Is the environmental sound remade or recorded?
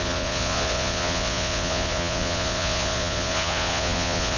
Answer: remade